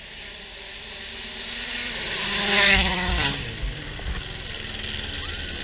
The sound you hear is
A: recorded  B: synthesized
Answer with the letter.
A